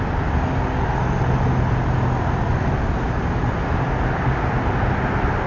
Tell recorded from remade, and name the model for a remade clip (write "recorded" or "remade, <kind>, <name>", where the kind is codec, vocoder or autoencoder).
recorded